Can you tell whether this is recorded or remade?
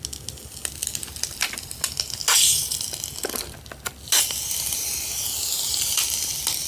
recorded